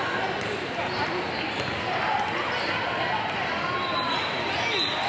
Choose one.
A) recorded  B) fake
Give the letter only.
A